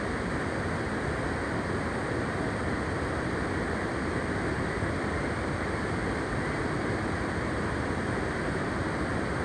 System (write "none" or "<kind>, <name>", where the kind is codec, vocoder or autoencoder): none